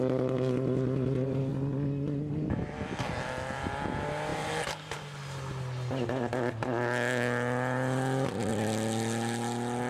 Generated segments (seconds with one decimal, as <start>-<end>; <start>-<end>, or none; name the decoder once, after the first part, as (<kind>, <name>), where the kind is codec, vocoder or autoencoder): none